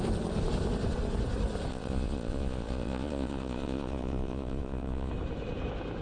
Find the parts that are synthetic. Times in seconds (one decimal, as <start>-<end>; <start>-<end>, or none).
1.7-5.1